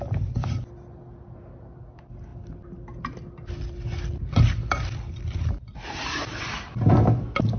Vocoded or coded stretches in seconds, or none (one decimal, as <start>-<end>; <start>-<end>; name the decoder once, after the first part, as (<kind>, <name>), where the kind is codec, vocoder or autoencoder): none

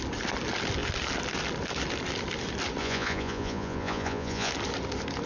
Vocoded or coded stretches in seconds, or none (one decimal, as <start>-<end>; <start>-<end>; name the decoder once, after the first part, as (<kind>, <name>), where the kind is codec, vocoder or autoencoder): 2.8-4.5 (vocoder, Vocos)

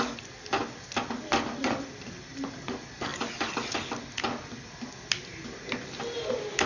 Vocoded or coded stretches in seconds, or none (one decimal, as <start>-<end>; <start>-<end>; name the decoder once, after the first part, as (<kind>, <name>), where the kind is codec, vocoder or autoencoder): none